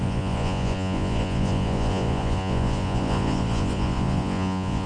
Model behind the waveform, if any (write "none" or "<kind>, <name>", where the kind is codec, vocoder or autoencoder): vocoder, Vocos